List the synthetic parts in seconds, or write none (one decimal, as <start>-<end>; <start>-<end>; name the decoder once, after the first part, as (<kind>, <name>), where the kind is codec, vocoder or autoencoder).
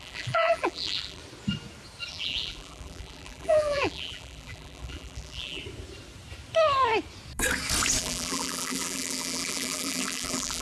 0.0-1.2 (vocoder, BigVGAN v2); 2.1-5.6; 8.0-10.6